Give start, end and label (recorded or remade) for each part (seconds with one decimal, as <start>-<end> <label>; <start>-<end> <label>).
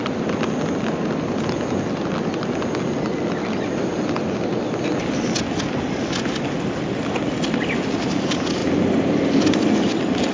0.0-10.3 recorded